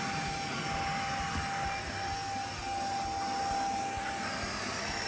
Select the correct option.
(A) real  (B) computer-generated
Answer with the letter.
A